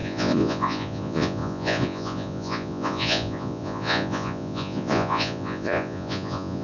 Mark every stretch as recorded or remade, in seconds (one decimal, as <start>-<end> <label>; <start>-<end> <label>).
0.0-6.6 remade